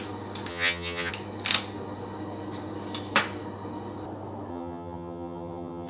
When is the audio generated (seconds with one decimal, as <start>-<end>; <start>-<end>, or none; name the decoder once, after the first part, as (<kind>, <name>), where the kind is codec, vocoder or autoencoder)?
0.5-1.1 (vocoder, HiFi-GAN); 4.5-5.9